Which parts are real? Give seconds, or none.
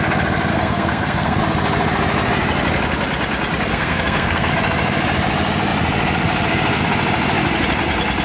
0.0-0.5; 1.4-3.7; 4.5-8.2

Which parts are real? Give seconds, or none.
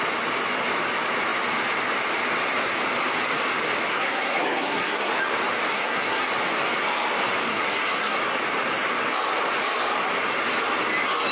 0.0-3.9; 5.1-5.7; 6.3-7.5; 8.2-11.3